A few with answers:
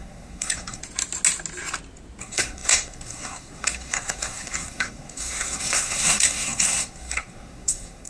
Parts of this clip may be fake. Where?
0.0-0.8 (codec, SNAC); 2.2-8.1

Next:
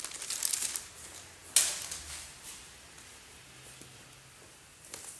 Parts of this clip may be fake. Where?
none

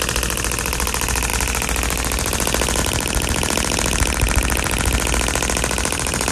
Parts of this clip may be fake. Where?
none

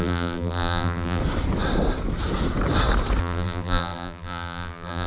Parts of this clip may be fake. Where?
0.0-1.2 (vocoder, BigVGAN v2); 3.2-5.1

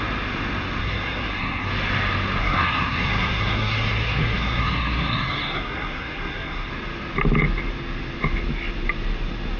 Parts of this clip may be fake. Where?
0.8-1.7 (codec, SNAC); 2.4-6.7